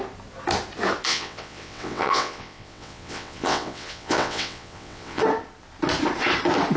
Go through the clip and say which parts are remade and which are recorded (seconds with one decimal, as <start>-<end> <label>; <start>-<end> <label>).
0.0-1.1 recorded; 1.1-5.2 remade; 5.2-6.8 recorded